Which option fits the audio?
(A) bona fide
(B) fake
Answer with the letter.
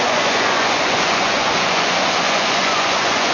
B